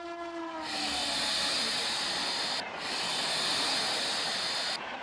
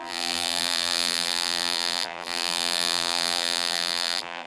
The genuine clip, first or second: first